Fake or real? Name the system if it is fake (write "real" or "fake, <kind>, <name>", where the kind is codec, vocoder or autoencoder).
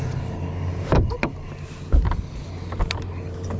real